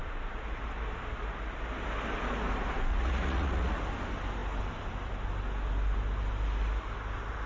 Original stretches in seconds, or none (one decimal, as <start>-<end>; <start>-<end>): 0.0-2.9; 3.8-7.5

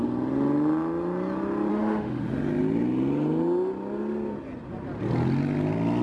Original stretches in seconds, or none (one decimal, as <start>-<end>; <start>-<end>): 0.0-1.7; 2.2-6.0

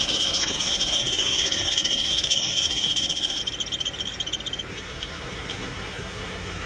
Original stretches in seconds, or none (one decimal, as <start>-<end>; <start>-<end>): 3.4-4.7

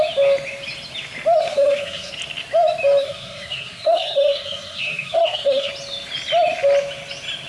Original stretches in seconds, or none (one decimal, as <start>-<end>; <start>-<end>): 0.0-1.4; 2.1-3.0; 5.7-7.5